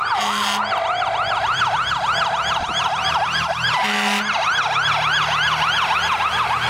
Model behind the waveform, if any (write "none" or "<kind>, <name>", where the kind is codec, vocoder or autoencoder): none